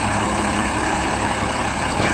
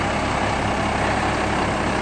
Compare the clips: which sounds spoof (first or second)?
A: first